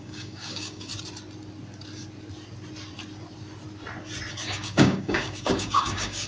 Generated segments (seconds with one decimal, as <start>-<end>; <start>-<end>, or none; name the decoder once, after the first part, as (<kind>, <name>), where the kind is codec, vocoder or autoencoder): 0.0-0.9 (codec, DAC); 4.3-6.3